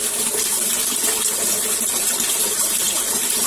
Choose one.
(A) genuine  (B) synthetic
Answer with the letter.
B